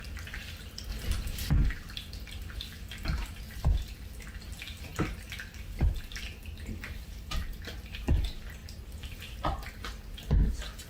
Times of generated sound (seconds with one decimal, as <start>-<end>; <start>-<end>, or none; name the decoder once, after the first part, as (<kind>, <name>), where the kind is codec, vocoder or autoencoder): 4.9-6.0 (vocoder, BigVGAN v2); 8.6-9.2